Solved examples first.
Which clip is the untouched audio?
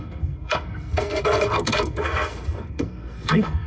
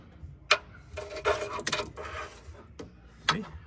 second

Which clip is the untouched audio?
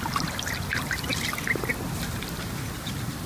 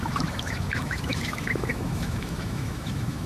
first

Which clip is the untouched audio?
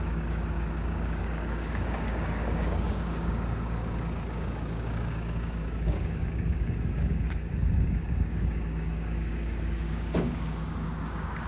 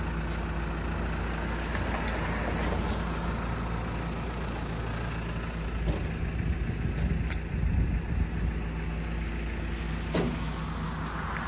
second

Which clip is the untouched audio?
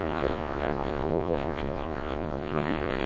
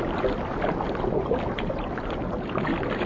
second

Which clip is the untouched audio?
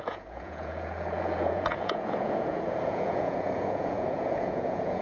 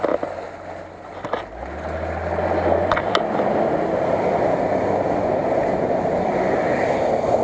second